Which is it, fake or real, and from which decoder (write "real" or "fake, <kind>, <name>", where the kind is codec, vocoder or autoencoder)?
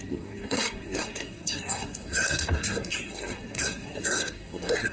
fake, codec, SNAC